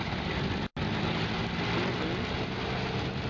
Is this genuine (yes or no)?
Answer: yes